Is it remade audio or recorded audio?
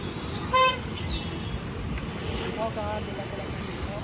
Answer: recorded